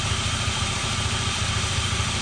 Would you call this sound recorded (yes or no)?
no